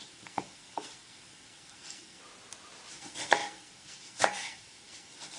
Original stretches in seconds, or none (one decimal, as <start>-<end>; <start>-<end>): 2.2-2.9